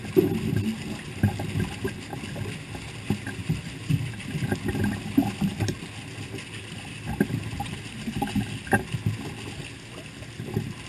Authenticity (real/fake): real